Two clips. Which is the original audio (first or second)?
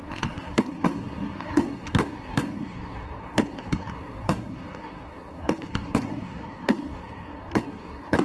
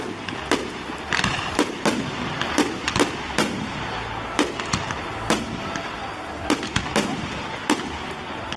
second